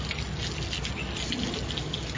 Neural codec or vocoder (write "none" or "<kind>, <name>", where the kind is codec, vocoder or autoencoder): none